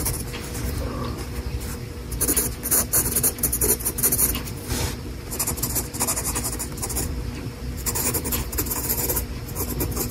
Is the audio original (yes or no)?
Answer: no